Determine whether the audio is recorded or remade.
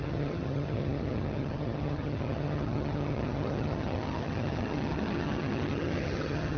remade